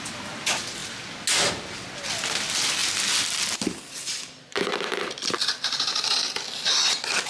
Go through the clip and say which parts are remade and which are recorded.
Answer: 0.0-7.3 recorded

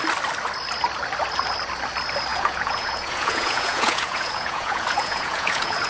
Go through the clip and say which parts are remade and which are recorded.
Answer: 0.0-2.3 recorded; 2.3-5.9 remade

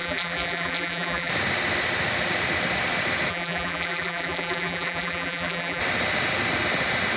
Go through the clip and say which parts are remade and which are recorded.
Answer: 0.0-1.3 remade; 1.3-3.3 recorded; 3.3-5.8 remade; 5.8-7.2 recorded

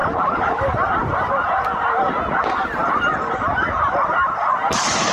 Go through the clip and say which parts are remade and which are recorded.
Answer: 0.0-0.6 remade; 0.6-5.1 recorded

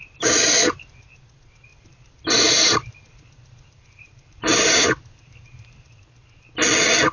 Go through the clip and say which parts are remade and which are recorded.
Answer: 0.0-1.7 recorded; 1.7-6.0 remade; 6.0-7.1 recorded

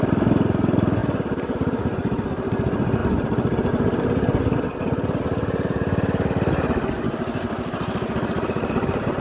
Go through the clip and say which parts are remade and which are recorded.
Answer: 0.0-9.2 recorded